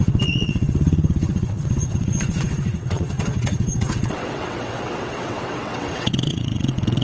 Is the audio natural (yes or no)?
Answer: no